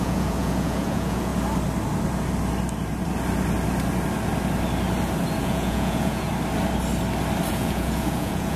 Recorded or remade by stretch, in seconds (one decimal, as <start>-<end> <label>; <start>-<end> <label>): 0.0-1.3 remade; 1.3-5.4 recorded; 5.4-6.3 remade; 6.3-7.5 recorded; 7.5-8.6 remade